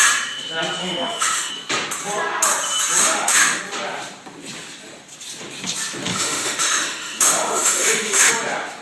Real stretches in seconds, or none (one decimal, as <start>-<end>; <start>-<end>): 0.0-0.8; 1.5-3.0; 3.6-6.1; 8.3-8.8

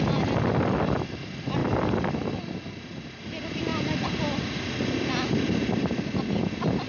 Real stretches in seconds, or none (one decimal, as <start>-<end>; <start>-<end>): 0.0-6.9